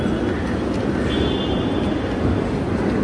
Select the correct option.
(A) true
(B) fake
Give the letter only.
A